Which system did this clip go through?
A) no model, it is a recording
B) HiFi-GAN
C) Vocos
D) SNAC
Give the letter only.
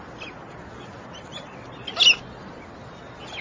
A